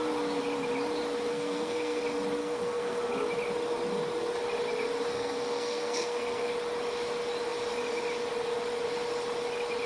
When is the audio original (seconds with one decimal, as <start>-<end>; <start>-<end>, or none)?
0.0-1.3; 2.0-2.4; 3.0-5.1; 6.5-9.9